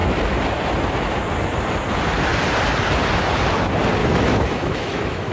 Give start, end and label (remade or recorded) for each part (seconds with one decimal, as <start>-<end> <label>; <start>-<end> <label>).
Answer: 0.0-4.0 recorded; 4.0-5.3 remade